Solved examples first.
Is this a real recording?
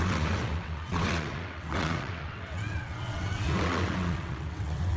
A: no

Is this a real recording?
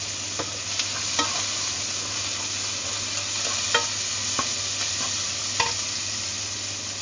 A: yes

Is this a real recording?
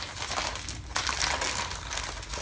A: yes